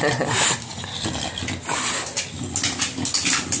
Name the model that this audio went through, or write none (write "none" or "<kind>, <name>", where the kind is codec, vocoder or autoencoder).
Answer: none